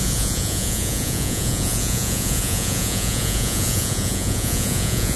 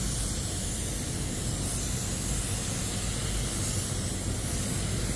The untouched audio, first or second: second